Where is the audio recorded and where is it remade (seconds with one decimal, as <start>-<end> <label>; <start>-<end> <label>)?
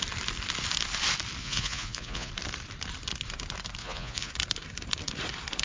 0.0-1.4 recorded; 1.4-2.3 remade; 2.3-3.8 recorded; 3.8-4.3 remade; 4.3-5.6 recorded